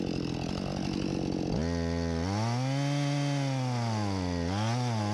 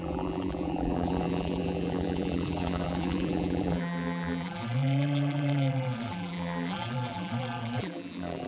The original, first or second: first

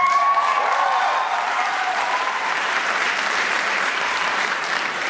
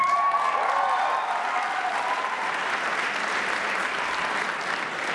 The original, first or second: second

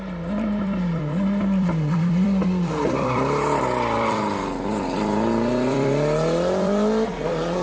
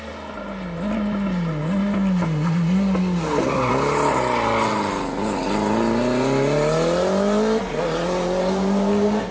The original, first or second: second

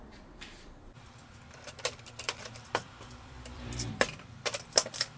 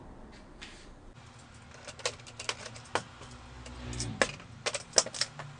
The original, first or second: second